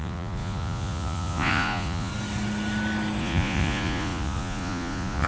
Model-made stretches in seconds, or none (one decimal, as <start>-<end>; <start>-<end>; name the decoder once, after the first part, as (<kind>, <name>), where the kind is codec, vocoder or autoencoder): 0.0-2.1 (vocoder, Vocos); 3.2-5.3